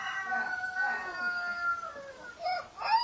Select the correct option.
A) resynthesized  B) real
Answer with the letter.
B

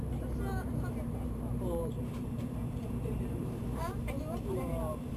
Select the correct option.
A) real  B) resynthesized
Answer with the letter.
B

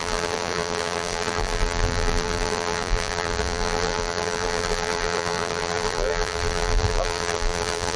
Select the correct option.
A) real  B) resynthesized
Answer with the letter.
B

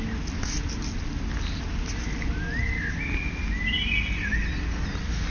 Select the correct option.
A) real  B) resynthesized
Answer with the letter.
A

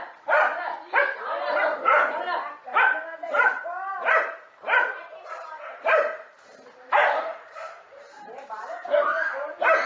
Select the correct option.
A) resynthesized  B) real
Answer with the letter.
A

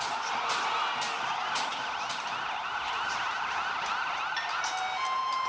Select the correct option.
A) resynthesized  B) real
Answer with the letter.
B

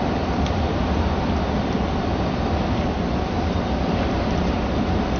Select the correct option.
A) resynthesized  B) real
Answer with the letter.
A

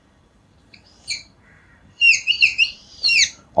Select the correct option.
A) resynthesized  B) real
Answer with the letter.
A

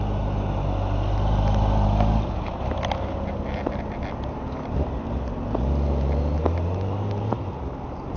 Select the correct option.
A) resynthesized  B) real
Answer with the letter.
B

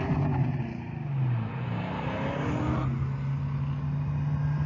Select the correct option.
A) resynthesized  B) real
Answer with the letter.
B